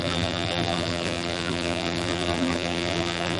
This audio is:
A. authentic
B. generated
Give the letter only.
B